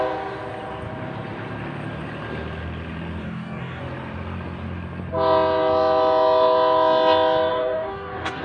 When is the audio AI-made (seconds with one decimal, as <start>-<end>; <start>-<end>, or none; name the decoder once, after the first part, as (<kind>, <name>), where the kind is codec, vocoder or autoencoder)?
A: 3.2-3.8 (codec, DAC); 7.5-8.4